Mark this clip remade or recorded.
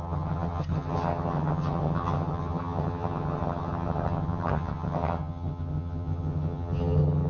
remade